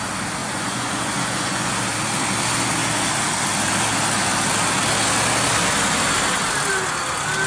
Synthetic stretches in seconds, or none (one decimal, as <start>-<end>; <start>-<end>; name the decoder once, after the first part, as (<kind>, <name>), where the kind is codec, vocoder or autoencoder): 0.4-1.7 (vocoder, Vocos)